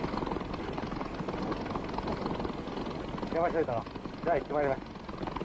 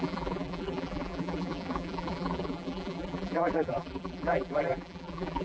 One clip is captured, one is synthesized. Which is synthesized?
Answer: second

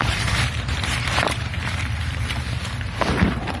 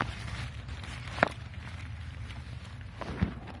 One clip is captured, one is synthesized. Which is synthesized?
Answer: first